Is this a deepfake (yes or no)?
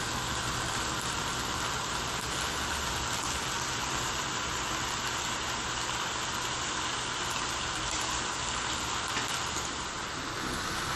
no